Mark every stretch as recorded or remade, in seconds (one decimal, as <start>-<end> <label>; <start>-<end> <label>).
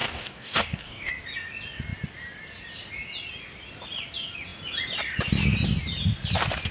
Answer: 0.0-1.1 remade; 1.1-6.7 recorded